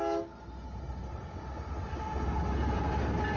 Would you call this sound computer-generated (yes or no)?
no